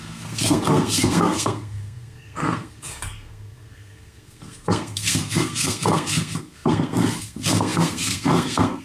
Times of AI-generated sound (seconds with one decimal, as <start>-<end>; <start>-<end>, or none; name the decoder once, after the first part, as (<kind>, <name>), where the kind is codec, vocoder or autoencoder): 0.0-8.8 (codec, SNAC)